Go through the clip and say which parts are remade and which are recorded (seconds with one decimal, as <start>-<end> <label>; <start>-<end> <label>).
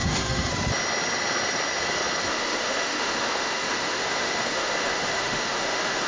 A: 0.0-0.5 remade; 0.5-2.3 recorded; 2.3-6.1 remade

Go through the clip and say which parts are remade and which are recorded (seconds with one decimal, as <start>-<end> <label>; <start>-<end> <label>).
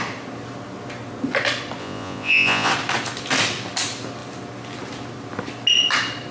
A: 0.0-1.8 recorded; 1.8-2.7 remade; 2.7-6.3 recorded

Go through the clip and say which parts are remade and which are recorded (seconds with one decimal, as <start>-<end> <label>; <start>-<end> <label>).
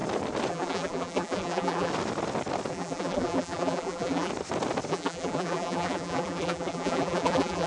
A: 0.0-0.5 recorded; 0.5-1.9 remade; 1.9-2.7 recorded; 2.7-4.3 remade; 4.3-4.9 recorded; 4.9-7.7 remade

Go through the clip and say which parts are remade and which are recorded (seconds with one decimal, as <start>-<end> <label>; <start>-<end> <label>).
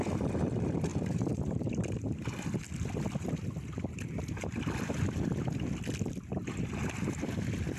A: 0.0-0.9 recorded; 0.9-1.6 remade; 1.6-7.8 recorded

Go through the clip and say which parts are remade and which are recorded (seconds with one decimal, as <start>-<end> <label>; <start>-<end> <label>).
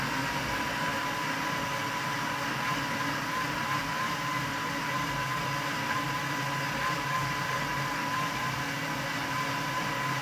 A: 0.0-10.2 recorded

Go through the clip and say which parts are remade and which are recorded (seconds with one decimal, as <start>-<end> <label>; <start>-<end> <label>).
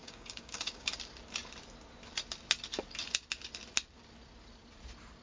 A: 0.0-0.9 remade; 0.9-5.2 recorded